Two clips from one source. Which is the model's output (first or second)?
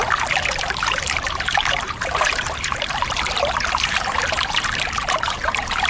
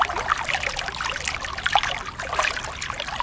first